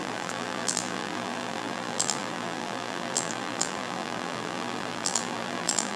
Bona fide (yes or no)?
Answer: no